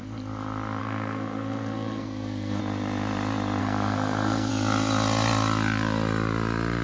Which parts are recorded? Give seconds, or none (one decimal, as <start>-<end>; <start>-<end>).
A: 0.0-0.8; 2.6-3.6; 4.5-6.8